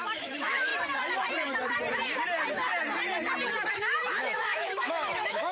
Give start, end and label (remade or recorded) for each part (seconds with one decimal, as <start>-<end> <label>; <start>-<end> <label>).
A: 0.0-0.7 remade; 0.7-3.7 recorded; 3.7-5.5 remade